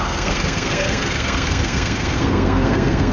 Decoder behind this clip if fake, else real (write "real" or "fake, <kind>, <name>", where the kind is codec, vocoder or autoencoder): fake, codec, SNAC